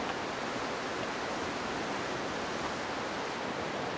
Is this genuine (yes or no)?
yes